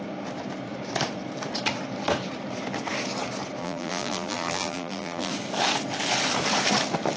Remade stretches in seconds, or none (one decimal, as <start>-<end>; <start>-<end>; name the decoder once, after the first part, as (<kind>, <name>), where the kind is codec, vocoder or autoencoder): 3.6-5.3 (vocoder, BigVGAN v2)